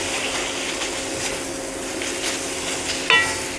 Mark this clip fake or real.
real